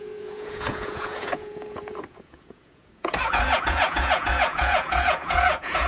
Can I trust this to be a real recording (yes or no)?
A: no